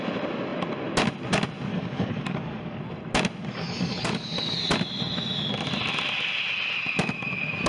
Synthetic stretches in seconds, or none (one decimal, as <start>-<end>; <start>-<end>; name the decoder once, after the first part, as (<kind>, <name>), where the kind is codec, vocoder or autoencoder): 1.7-2.8 (codec, DAC); 3.4-4.6

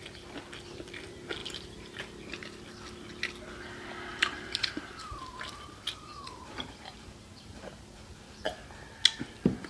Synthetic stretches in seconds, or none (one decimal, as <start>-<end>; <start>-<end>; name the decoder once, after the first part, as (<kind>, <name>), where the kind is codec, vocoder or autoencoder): 1.4-2.6 (vocoder, BigVGAN v2); 4.1-8.1

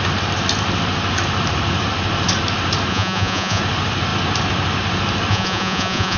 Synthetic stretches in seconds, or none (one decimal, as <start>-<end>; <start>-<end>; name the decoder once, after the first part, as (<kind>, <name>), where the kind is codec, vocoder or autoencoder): 2.9-3.6 (vocoder, Vocos); 5.3-6.2

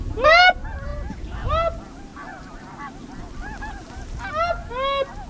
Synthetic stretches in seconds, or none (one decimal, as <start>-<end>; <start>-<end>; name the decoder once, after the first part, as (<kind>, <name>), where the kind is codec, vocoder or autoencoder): none

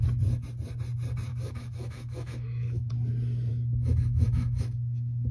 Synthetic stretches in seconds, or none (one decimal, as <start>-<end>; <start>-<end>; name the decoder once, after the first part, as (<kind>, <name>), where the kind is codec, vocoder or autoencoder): 1.3-2.9 (autoencoder, DAC-VAE); 3.5-5.3

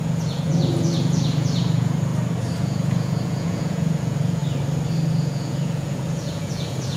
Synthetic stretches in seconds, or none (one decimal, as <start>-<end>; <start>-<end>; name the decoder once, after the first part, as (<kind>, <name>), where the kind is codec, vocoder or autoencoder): 0.0-2.1 (vocoder, Vocos); 2.6-4.4; 5.1-7.0

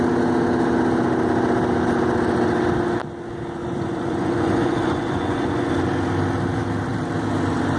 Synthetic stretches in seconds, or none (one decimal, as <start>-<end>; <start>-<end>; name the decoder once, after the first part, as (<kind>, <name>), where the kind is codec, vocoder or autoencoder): 3.6-5.7 (vocoder, Vocos)

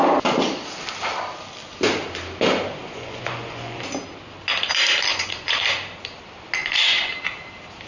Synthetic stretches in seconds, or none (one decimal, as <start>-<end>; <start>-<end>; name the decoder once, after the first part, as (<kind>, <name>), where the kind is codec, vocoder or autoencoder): 2.8-3.8 (vocoder, Vocos); 5.1-5.6; 6.6-7.1